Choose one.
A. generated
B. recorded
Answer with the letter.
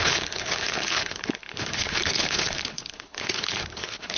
A